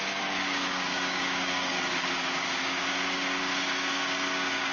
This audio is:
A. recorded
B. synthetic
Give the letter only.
B